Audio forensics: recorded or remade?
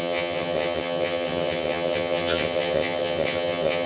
remade